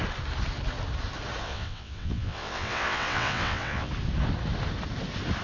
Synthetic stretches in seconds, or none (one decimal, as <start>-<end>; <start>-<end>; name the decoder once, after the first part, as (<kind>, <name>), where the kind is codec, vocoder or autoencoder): 1.4-3.9 (vocoder, WaveNeXt)